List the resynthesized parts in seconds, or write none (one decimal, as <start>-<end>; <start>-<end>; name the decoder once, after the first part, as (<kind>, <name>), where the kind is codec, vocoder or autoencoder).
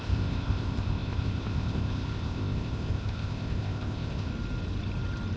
0.0-4.3 (codec, ZipCodec)